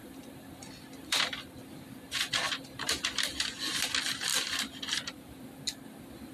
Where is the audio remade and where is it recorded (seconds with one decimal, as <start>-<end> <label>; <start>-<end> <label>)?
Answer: 0.0-3.8 remade; 3.8-4.3 recorded; 4.3-5.4 remade; 5.4-6.3 recorded